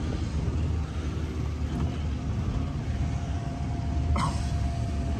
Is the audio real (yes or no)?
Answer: yes